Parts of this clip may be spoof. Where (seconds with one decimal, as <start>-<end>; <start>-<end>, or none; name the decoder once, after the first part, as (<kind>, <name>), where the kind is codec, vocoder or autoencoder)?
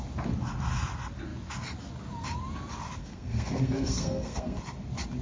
3.0-4.6 (codec, SNAC)